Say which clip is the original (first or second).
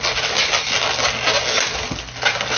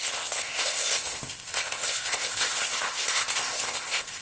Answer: first